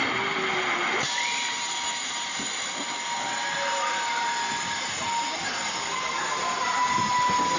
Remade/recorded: recorded